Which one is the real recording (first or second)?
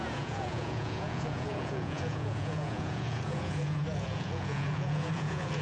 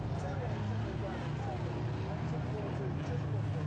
second